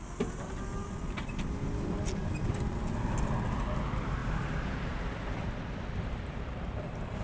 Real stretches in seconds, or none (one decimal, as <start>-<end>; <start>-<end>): 0.0-4.2

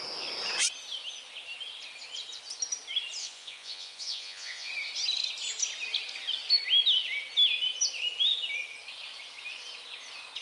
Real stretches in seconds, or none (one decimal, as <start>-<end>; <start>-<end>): 0.0-3.2; 4.7-10.4

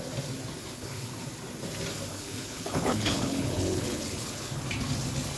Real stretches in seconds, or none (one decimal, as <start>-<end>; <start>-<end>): 0.0-0.6; 1.1-2.1; 4.6-5.4

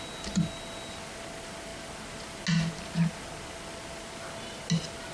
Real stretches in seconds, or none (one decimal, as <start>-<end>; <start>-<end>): 0.0-5.1

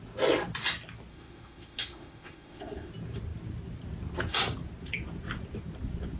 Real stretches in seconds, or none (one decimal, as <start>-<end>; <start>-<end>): 0.0-1.1; 2.9-6.2

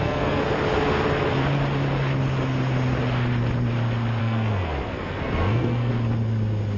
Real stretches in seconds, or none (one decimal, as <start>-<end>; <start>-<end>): 0.4-4.2; 5.9-6.8

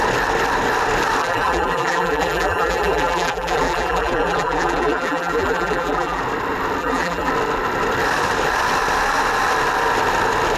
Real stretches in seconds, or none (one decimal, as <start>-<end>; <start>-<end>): 0.0-1.2; 6.2-6.8; 7.3-10.6

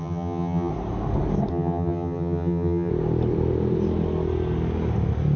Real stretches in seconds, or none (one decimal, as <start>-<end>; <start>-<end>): 0.7-1.5; 2.9-5.4